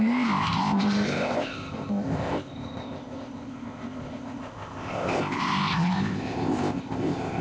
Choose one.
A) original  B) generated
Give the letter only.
B